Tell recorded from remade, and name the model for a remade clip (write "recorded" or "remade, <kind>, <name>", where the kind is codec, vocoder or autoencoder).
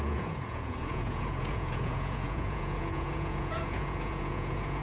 remade, vocoder, Vocos